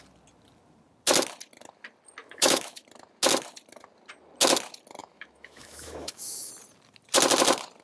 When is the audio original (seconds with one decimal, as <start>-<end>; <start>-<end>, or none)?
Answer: 0.0-2.2; 2.8-5.0; 6.5-7.8